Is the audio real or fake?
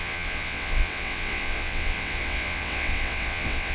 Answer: fake